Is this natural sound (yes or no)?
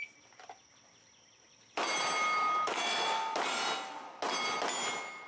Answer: yes